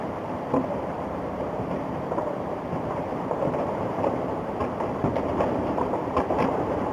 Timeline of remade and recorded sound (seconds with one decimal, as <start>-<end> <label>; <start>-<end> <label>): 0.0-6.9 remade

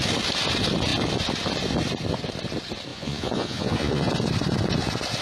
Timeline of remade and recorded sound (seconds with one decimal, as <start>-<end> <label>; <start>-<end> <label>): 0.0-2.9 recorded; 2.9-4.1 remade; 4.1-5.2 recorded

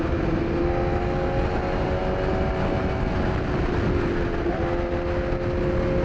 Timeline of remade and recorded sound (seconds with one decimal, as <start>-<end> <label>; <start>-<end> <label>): 0.0-6.0 recorded

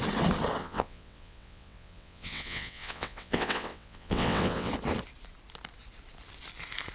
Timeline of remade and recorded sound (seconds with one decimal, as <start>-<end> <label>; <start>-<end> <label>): 0.0-0.6 recorded; 0.6-4.7 remade; 4.7-6.9 recorded